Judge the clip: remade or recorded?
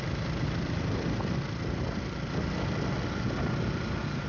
recorded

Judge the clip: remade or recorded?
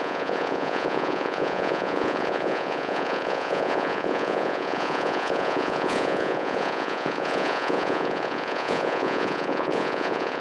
remade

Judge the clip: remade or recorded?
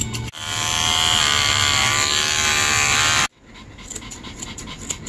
recorded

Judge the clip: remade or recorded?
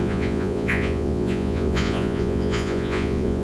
remade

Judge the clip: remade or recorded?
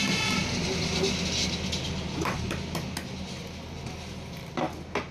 recorded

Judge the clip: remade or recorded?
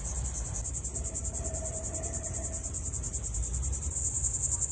recorded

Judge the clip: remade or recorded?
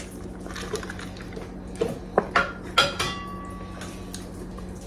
recorded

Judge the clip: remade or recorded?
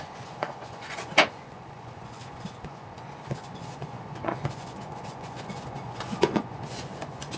remade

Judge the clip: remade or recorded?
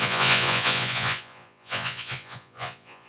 remade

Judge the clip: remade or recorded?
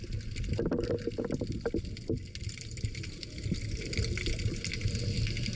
recorded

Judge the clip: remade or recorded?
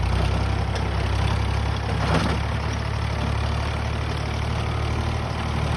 recorded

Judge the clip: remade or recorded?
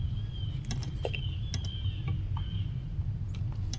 recorded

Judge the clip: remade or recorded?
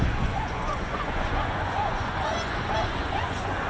remade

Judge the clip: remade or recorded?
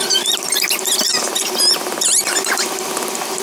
recorded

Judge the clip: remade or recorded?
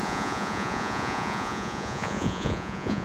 remade